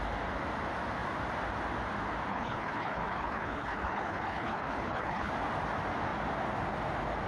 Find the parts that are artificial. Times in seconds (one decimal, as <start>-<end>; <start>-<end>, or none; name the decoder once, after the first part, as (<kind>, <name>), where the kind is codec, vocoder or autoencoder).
2.3-5.3 (codec, HILCodec)